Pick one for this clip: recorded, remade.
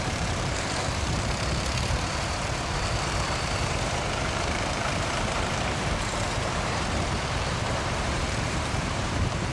remade